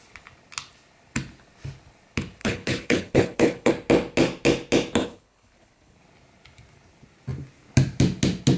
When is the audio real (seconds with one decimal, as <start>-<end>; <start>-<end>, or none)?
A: 0.0-2.4; 3.7-5.0; 6.0-8.6